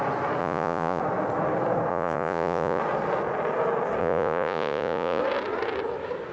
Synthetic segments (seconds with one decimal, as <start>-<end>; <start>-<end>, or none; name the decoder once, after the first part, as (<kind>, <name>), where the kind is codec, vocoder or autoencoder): 0.4-1.0 (vocoder, Vocos); 1.9-2.8; 4.0-5.2